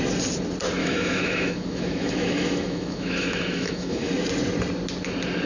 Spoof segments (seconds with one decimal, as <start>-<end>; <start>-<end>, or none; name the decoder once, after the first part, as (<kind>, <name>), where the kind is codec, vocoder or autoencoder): 0.8-4.1 (autoencoder, DAC-VAE)